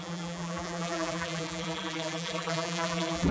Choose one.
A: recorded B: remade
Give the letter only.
B